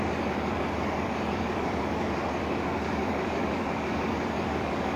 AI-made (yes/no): yes